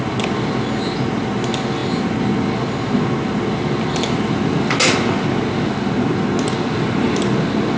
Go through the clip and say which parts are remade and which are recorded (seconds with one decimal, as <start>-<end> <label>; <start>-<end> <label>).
0.0-7.8 recorded